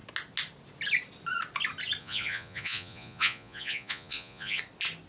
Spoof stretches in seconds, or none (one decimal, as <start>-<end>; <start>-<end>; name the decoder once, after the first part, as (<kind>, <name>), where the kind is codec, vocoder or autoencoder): 2.0-4.6 (vocoder, Vocos)